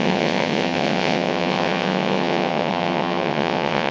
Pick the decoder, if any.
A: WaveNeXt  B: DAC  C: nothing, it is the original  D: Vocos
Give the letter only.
A